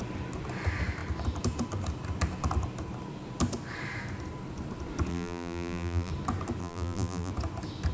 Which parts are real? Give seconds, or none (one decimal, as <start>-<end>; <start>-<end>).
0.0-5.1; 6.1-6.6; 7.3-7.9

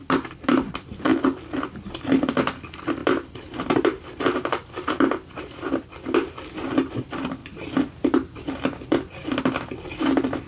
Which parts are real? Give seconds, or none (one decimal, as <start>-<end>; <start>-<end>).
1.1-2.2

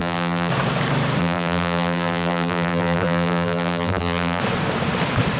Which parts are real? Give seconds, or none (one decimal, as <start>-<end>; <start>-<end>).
0.5-1.2; 4.4-5.4

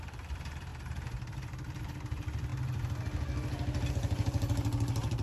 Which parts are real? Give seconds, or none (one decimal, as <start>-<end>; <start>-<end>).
2.5-3.9

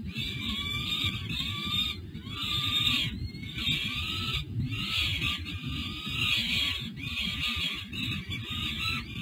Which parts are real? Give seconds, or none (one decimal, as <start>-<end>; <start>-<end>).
0.0-9.2

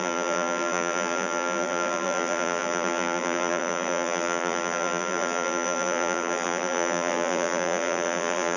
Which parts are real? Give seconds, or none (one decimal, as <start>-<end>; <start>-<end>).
none